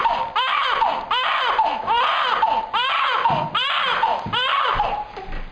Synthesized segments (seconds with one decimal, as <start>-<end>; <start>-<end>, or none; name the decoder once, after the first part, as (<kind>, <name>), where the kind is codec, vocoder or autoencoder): none